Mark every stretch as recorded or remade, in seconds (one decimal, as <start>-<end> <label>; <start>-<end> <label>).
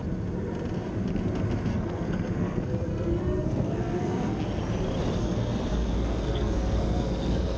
0.0-1.7 recorded; 1.7-4.4 remade; 4.4-5.2 recorded; 5.2-7.6 remade